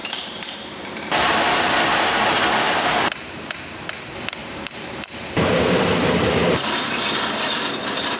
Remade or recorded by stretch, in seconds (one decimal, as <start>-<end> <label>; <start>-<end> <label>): 0.0-1.1 remade; 1.1-4.4 recorded; 4.4-8.2 remade